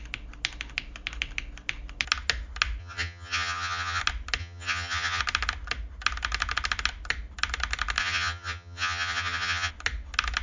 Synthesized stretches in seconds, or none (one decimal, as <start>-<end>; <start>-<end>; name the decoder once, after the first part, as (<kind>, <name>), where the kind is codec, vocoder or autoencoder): 2.8-4.0 (vocoder, HiFi-GAN); 4.4-5.2; 8.0-9.7